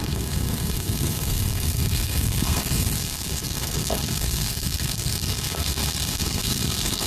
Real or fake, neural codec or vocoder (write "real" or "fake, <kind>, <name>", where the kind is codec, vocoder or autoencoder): fake, codec, SNAC